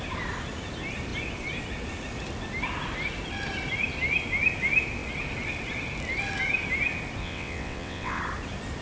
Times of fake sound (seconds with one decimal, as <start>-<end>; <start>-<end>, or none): 7.2-8.2